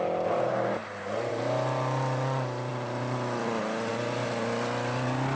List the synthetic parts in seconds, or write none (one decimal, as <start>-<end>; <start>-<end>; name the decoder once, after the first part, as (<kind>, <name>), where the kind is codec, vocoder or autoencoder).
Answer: none